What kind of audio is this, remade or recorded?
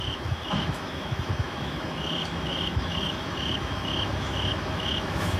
remade